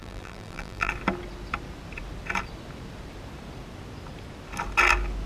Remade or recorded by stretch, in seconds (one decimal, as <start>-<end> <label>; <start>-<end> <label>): 0.0-0.9 remade; 0.9-5.3 recorded